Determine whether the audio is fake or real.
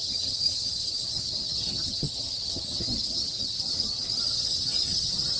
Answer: fake